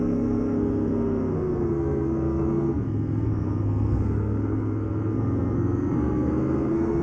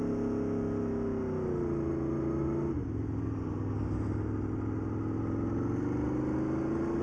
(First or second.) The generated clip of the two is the first